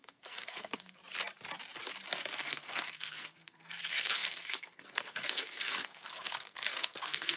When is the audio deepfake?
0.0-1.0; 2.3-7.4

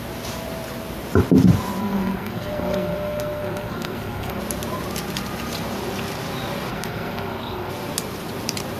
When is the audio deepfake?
1.8-4.4; 6.7-7.7

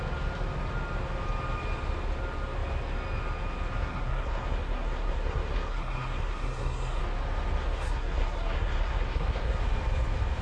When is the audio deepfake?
3.8-7.0; 7.6-9.6

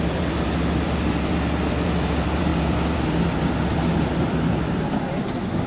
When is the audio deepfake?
0.0-5.7

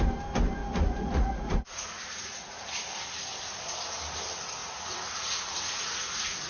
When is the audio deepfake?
0.6-2.7; 4.6-6.5

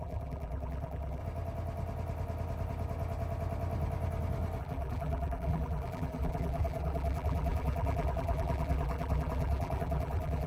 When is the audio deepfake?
0.0-1.2; 4.6-10.5